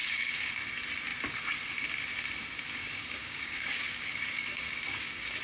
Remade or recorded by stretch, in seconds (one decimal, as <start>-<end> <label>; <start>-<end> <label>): 0.0-0.5 remade; 0.5-2.8 recorded; 2.8-5.4 remade